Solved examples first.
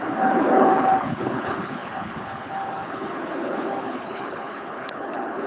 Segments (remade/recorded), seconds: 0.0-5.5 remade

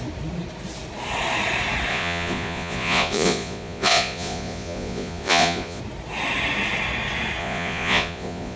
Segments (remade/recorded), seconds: 0.0-1.9 recorded; 1.9-5.8 remade; 5.8-7.4 recorded; 7.4-8.6 remade

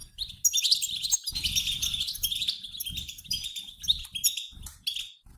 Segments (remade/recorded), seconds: 0.0-5.4 recorded

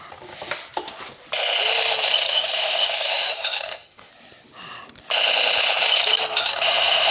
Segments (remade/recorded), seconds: 0.0-2.3 recorded; 2.3-4.1 remade; 4.1-6.4 recorded; 6.4-7.1 remade

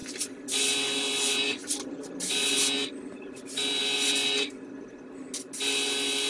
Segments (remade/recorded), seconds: 0.0-6.3 recorded